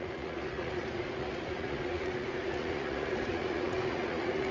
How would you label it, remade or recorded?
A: remade